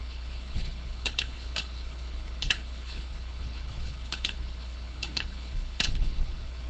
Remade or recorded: remade